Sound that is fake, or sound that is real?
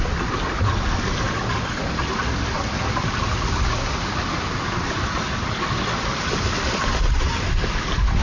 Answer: real